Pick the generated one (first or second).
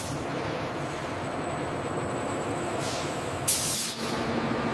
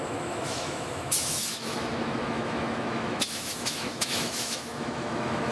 second